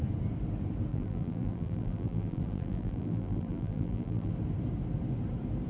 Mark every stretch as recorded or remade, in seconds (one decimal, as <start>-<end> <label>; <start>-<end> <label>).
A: 0.0-0.9 recorded; 0.9-4.3 remade; 4.3-5.7 recorded